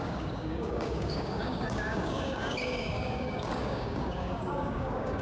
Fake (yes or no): yes